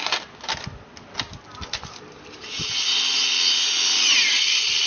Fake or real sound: real